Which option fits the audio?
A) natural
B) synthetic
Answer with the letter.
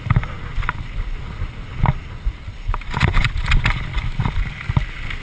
A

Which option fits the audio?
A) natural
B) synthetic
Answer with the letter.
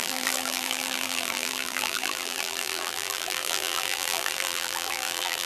B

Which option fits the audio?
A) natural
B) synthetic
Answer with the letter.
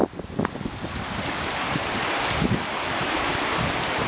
A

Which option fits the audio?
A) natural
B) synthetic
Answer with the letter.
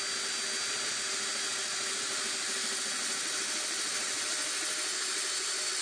A